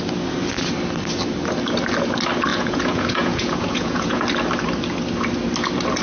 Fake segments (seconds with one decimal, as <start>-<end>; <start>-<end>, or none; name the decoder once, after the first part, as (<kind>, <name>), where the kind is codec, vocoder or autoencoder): 2.5-4.2 (vocoder, Vocos)